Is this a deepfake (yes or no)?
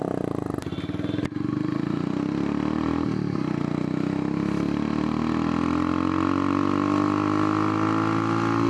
no